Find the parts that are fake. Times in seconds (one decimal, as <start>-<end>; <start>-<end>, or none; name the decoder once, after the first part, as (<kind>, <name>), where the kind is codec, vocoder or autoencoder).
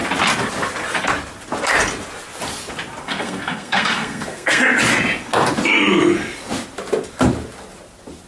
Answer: 3.0-4.6 (codec, SNAC)